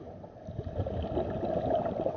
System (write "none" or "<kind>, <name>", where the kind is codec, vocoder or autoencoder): none